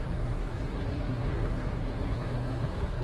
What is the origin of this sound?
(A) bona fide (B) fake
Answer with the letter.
B